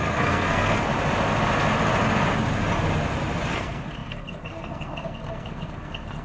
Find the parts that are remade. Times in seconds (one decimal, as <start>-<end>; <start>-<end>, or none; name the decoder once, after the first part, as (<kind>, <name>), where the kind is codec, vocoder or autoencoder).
0.0-0.9 (codec, SNAC); 3.5-6.2

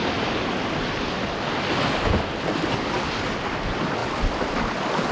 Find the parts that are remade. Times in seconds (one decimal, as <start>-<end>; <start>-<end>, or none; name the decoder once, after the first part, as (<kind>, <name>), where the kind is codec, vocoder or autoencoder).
4.0-4.6 (vocoder, BigVGAN v2)

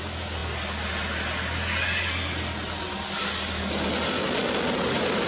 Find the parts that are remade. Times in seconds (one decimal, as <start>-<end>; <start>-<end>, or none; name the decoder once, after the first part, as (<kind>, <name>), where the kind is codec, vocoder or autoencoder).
none

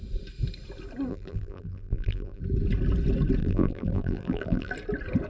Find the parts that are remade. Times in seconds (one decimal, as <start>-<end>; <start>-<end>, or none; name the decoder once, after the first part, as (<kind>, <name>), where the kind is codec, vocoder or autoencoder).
1.1-2.4 (vocoder, BigVGAN v2); 3.4-4.7

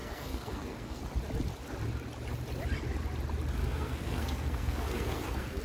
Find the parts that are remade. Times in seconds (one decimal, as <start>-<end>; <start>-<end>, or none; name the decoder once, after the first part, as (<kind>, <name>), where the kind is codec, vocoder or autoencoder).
0.0-1.0 (codec, SNAC); 3.6-5.6

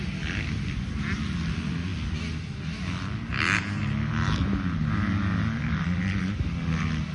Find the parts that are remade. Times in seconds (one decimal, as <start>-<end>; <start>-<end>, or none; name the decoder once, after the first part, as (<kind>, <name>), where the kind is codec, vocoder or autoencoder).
none

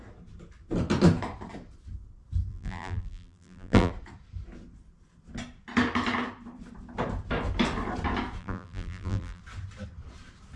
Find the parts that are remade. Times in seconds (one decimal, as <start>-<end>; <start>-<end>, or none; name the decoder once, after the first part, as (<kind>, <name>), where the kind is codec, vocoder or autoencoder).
2.5-3.9 (vocoder, BigVGAN v2); 8.4-9.4

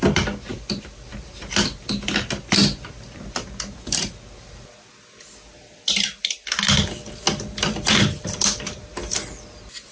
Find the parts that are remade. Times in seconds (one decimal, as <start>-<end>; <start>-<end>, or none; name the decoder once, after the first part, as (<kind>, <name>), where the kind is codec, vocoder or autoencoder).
none